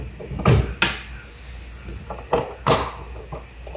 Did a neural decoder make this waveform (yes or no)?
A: no